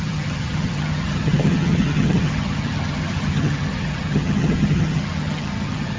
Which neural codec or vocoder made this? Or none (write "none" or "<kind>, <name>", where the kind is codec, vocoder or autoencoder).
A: vocoder, HiFi-GAN